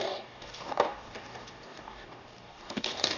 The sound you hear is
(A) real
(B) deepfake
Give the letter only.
B